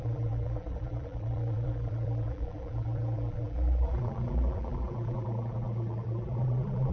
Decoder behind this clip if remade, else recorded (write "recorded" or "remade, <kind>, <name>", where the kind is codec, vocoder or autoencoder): remade, vocoder, BigVGAN v2